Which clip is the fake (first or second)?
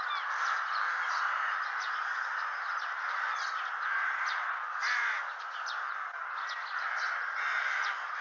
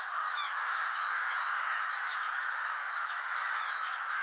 second